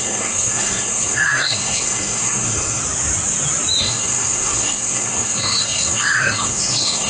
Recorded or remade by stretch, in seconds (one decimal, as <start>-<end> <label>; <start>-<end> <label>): 0.0-2.8 remade; 2.8-3.8 recorded; 3.8-7.1 remade